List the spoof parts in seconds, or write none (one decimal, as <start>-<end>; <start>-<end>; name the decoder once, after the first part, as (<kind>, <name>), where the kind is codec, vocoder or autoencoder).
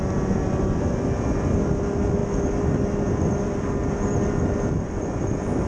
none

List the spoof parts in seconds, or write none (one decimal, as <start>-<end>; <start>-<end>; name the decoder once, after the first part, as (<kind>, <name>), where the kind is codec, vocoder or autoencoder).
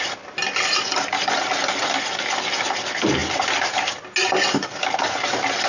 none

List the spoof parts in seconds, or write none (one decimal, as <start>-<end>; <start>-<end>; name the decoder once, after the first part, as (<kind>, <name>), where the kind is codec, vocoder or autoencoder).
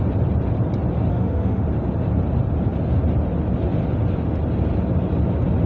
1.1-1.6 (autoencoder, DAC-VAE)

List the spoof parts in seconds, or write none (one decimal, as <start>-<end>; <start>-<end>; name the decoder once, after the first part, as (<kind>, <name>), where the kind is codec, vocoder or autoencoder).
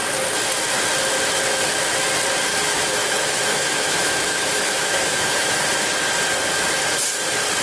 2.5-5.6 (autoencoder, DAC-VAE)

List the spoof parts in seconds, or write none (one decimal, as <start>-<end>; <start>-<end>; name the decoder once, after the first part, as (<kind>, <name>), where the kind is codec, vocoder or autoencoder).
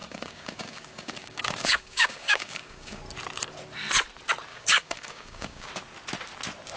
0.0-3.0 (codec, DAC); 4.5-5.7